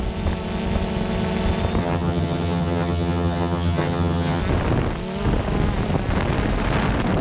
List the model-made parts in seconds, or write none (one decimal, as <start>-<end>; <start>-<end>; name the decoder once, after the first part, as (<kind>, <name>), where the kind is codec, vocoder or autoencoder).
1.8-4.4 (vocoder, HiFi-GAN)